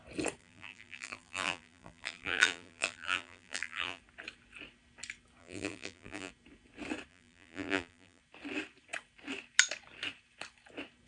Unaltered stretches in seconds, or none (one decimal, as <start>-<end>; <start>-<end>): 0.0-0.4; 4.0-5.4; 6.3-7.1; 8.2-11.1